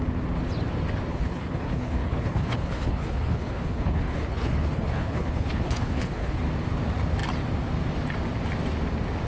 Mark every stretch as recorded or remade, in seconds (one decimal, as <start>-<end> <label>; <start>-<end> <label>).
0.0-1.1 recorded; 1.1-6.4 remade; 6.4-9.3 recorded